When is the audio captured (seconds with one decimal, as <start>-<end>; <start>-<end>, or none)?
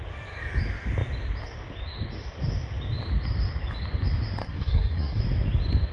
0.0-4.4; 5.2-5.9